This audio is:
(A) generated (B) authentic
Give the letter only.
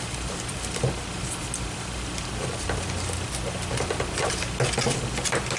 B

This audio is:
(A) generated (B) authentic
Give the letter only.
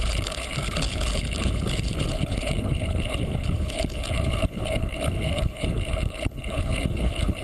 A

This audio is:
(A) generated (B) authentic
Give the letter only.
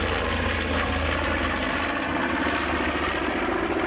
B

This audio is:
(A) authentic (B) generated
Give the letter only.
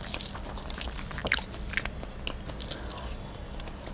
A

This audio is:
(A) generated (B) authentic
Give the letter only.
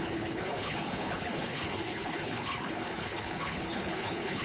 A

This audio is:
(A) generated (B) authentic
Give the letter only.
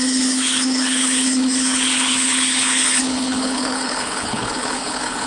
A